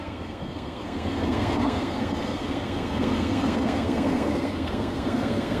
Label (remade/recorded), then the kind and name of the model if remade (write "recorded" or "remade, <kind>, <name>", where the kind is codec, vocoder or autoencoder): remade, codec, SNAC